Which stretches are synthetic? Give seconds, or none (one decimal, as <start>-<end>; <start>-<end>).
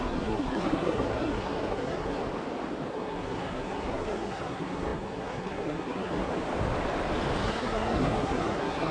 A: 0.0-2.2; 2.9-6.3; 7.4-8.9